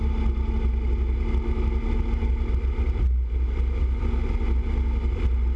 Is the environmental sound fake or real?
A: real